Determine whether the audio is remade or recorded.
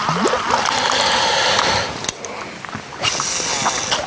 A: recorded